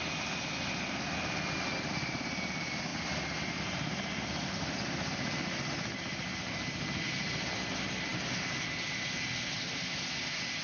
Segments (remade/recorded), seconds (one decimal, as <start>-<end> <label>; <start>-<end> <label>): 0.0-10.6 recorded